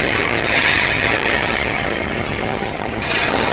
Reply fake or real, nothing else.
fake